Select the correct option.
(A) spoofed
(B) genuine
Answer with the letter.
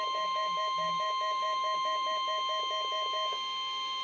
A